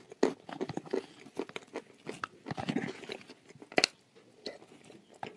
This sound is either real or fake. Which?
real